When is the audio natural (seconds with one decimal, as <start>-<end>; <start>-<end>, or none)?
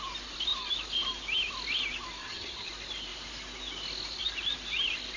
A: 0.0-2.2; 2.7-5.2